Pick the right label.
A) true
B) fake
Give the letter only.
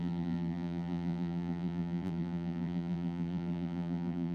B